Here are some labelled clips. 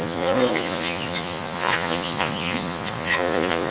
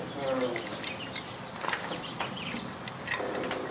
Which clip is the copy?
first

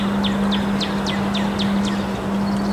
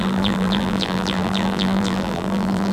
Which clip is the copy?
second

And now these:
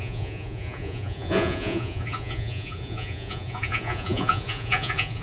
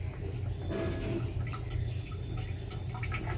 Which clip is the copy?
first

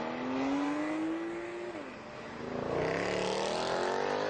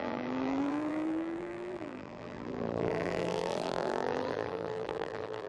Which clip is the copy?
second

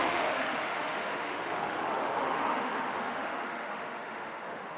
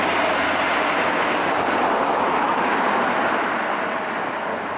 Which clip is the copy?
first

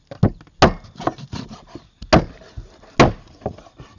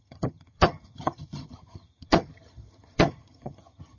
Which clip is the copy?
second